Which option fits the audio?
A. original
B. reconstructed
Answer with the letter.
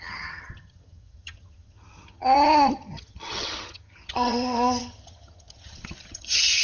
B